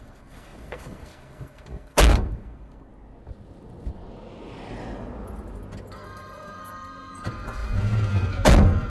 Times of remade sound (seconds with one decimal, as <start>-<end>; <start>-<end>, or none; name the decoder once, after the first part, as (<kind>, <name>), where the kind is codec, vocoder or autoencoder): 0.0-2.9 (codec, SNAC); 5.9-8.9